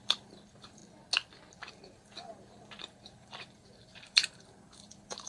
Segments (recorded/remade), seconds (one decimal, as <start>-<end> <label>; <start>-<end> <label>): 0.0-0.8 remade; 0.8-1.7 recorded; 1.7-5.3 remade